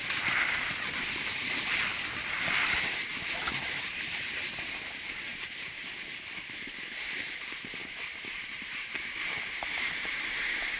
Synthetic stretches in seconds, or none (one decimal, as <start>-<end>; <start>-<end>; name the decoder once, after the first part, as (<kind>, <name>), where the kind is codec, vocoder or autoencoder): 5.3-5.9 (vocoder, BigVGAN v2); 7.8-10.8